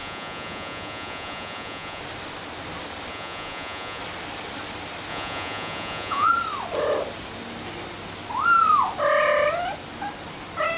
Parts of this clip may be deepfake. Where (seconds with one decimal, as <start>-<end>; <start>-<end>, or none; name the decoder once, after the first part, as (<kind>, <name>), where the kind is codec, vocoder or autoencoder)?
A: 0.0-2.0 (vocoder, Vocos); 3.1-4.0; 5.1-6.3